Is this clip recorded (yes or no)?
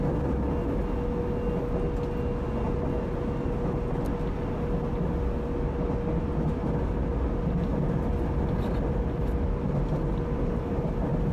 yes